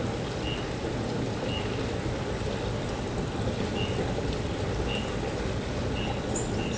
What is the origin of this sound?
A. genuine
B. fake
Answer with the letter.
A